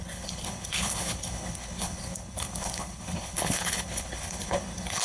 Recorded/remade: remade